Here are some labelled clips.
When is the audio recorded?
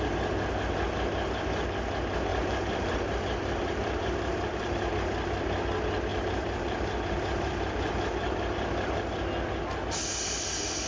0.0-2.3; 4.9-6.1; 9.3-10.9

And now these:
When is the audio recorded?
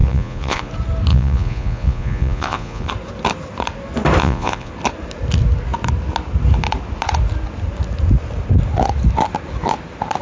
0.7-1.1; 2.9-4.2; 4.7-10.2